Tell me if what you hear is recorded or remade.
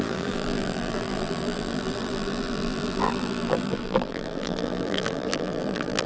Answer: remade